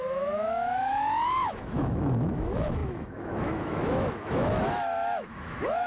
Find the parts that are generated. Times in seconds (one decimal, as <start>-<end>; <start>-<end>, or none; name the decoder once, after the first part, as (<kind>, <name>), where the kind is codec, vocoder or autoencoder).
0.0-5.9 (autoencoder, DAC-VAE)